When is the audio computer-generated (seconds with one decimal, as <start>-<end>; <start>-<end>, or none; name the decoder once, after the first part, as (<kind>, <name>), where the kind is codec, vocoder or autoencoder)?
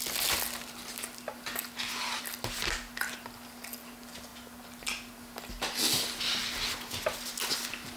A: none